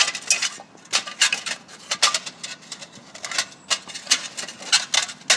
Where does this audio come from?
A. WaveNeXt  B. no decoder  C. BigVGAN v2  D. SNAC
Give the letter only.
B